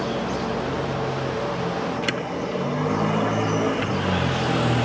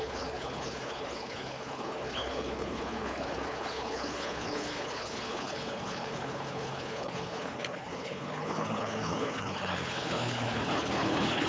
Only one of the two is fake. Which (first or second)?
second